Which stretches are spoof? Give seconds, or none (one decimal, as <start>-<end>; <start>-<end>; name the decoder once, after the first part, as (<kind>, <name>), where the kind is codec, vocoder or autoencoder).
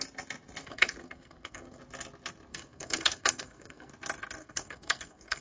0.6-1.8 (codec, SNAC); 2.5-3.9; 4.4-5.4